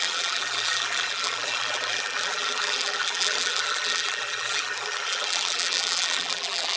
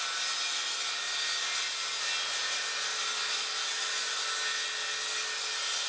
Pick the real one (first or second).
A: second